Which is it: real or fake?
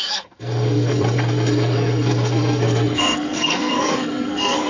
fake